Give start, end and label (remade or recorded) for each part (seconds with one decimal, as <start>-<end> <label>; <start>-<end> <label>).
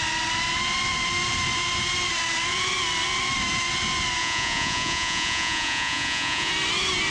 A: 0.0-4.2 recorded; 4.2-6.5 remade; 6.5-7.1 recorded